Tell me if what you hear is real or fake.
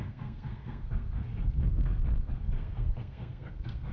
fake